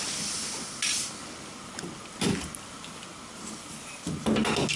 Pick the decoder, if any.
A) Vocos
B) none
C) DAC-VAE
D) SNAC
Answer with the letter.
B